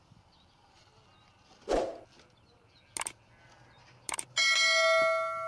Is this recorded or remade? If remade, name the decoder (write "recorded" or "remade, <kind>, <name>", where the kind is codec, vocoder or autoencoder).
recorded